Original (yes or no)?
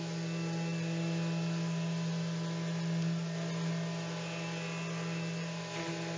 yes